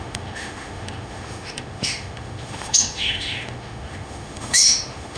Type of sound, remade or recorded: remade